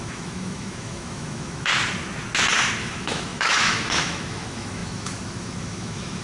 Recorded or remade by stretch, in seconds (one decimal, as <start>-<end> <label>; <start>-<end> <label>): 0.0-1.7 remade; 1.7-2.8 recorded; 2.8-6.2 remade